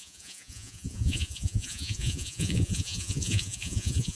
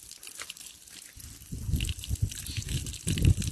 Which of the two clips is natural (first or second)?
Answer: second